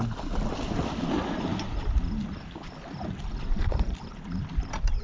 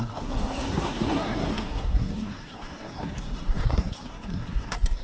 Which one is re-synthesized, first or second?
second